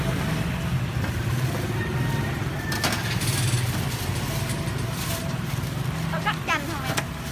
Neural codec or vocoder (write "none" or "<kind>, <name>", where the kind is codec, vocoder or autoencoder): none